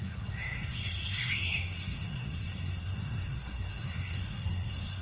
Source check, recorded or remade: remade